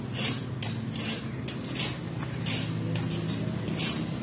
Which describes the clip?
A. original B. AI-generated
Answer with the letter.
A